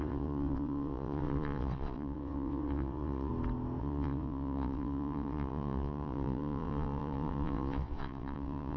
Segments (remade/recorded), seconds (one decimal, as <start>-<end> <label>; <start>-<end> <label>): 0.0-3.3 remade; 3.3-3.8 recorded; 3.8-8.8 remade

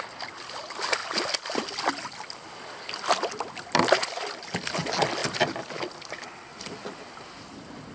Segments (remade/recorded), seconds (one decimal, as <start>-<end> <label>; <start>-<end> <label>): 0.0-7.9 recorded

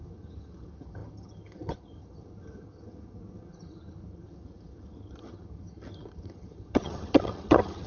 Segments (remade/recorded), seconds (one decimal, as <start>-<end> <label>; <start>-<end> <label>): 0.0-7.9 remade

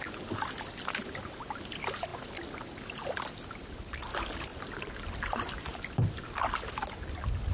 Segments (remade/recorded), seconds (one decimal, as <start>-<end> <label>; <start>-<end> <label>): 0.0-7.5 recorded

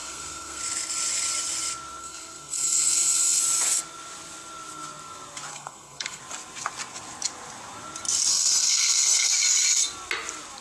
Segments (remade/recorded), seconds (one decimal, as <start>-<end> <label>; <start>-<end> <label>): 0.0-0.6 remade; 0.6-2.0 recorded; 2.0-3.4 remade; 3.4-5.5 recorded; 5.5-6.2 remade; 6.2-8.3 recorded; 8.3-9.3 remade; 9.3-10.6 recorded

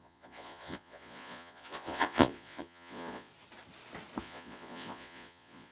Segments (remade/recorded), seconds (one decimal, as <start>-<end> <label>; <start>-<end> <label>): 0.0-3.3 remade; 3.3-4.2 recorded; 4.2-5.7 remade